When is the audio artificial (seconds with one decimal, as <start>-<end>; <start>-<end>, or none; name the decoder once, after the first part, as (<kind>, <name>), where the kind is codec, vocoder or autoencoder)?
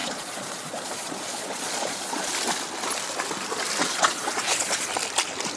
0.0-2.3 (vocoder, Vocos); 3.8-4.9